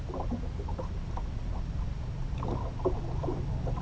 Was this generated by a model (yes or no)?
no